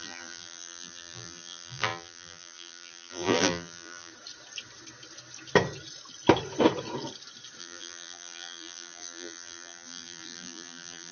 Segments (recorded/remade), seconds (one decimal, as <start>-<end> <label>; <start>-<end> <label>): 0.0-4.1 remade; 4.1-7.6 recorded; 7.6-11.1 remade